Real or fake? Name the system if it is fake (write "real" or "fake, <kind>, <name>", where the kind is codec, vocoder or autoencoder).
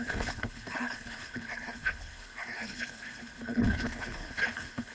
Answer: fake, codec, HILCodec